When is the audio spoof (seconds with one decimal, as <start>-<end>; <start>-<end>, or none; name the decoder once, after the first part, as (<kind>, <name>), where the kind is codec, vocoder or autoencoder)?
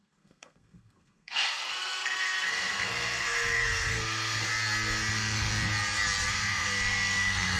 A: 0.0-4.5 (codec, SNAC); 5.1-5.5; 6.3-7.6